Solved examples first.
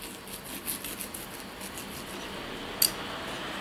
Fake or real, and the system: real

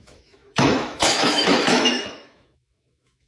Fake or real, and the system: fake, autoencoder, DAC-VAE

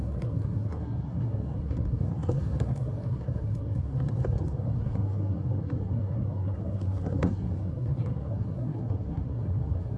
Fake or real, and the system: fake, codec, SNAC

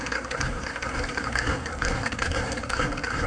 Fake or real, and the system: fake, codec, SNAC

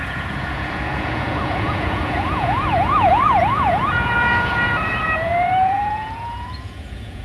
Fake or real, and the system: fake, vocoder, Vocos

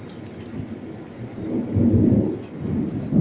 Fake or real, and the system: real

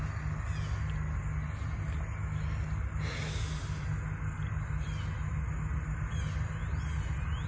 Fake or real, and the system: real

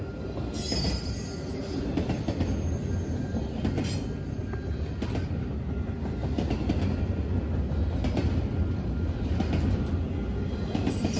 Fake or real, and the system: real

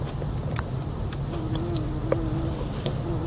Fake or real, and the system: real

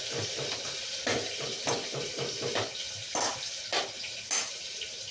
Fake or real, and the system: real